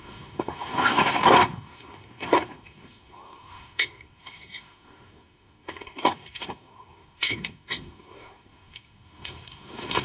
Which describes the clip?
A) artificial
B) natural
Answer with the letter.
A